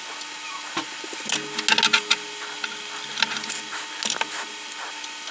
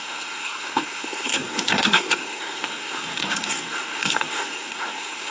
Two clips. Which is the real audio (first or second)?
first